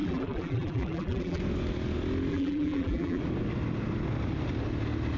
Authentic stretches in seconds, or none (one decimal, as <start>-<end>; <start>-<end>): 1.4-2.3; 3.2-5.2